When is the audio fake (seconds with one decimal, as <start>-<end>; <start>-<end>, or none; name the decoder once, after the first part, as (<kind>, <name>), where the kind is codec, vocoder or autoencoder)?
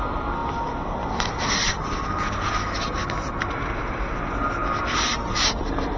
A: 4.6-6.0 (vocoder, BigVGAN v2)